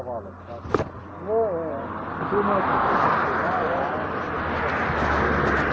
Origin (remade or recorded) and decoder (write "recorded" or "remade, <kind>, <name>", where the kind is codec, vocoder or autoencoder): recorded